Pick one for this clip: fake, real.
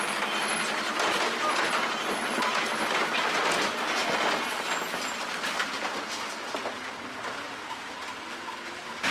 real